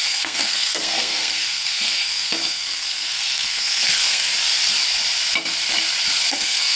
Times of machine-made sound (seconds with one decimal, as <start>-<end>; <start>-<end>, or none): 0.0-4.3; 6.3-6.8